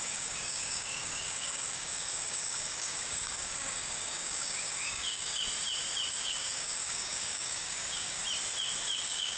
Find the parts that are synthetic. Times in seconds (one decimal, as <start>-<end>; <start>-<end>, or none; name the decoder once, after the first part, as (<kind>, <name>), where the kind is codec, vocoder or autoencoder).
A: 0.0-5.4 (codec, DAC); 6.1-8.2; 9.0-9.4